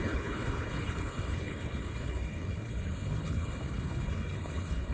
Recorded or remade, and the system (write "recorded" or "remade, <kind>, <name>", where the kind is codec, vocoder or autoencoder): remade, codec, HILCodec